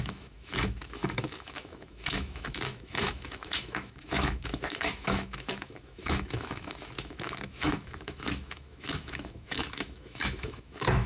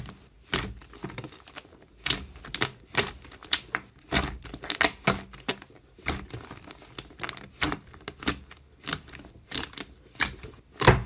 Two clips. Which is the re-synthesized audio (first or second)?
first